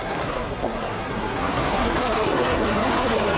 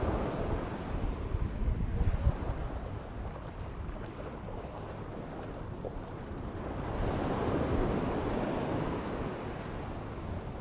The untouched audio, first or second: second